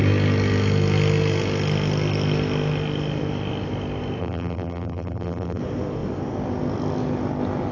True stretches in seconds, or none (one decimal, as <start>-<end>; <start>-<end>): 0.0-4.2; 5.6-7.7